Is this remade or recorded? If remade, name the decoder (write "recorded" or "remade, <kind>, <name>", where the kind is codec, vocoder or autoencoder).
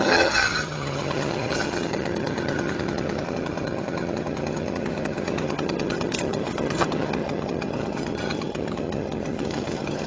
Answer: remade, vocoder, HiFi-GAN